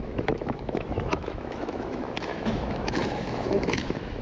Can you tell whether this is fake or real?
fake